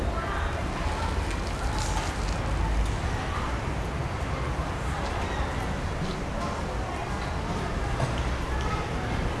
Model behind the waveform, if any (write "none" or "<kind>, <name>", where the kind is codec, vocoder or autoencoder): none